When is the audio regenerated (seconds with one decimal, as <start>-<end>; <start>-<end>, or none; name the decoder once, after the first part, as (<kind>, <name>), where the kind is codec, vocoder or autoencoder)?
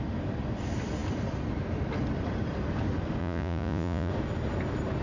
3.2-4.1 (vocoder, Vocos)